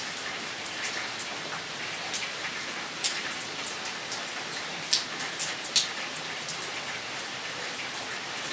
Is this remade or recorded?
recorded